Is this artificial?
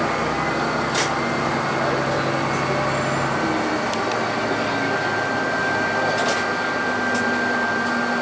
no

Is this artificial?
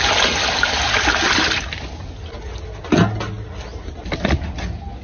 no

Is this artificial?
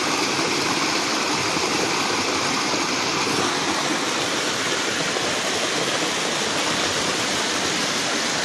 no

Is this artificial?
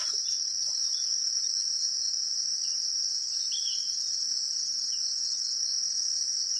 no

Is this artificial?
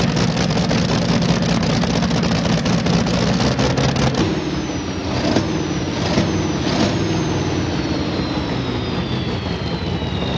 no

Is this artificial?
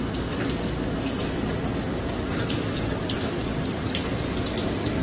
no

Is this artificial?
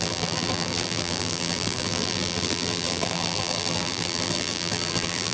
yes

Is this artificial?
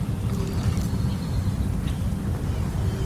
no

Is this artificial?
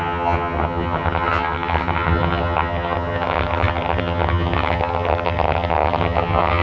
yes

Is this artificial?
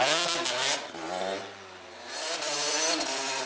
no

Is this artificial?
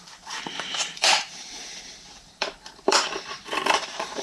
yes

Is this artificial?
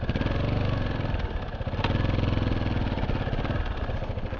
no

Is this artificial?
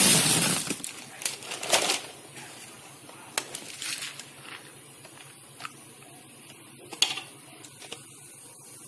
no